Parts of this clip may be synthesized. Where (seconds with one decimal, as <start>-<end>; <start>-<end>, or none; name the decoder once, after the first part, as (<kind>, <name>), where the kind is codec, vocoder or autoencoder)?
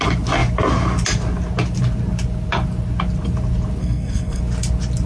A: 3.8-4.4 (codec, SNAC)